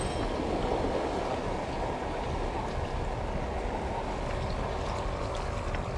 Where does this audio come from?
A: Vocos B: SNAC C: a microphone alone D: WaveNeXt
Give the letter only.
C